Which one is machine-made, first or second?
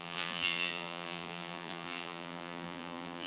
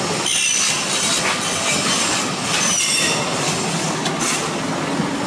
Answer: first